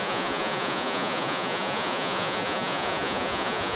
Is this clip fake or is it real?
fake